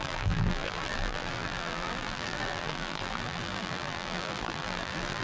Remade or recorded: remade